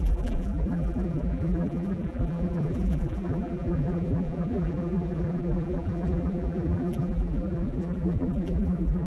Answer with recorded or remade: remade